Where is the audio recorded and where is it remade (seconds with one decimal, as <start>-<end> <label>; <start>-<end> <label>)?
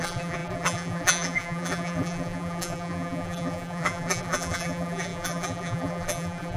0.0-6.6 remade